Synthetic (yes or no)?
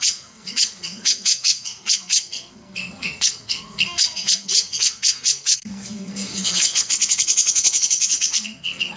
yes